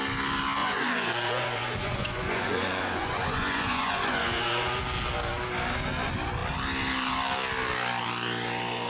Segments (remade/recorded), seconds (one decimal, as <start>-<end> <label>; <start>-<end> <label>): 0.0-0.6 recorded; 0.6-4.8 remade; 4.8-8.9 recorded